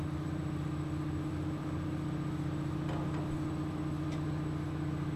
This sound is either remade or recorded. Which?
recorded